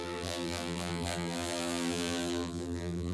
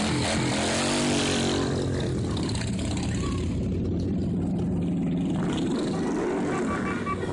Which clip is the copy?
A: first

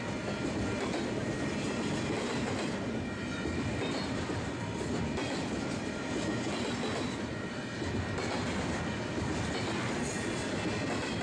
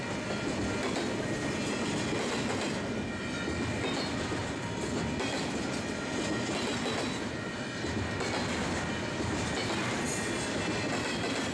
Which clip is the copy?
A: first